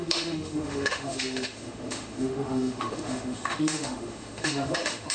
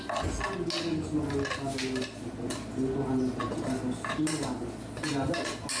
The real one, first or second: second